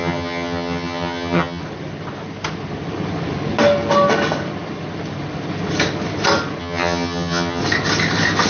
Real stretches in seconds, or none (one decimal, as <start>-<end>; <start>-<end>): 1.6-6.6; 7.6-8.5